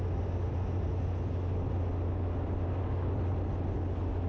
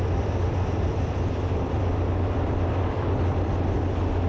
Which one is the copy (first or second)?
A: second